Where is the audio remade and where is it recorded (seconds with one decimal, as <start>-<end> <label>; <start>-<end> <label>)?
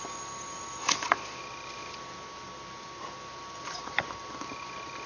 0.0-0.8 recorded; 0.8-1.4 remade; 1.4-5.1 recorded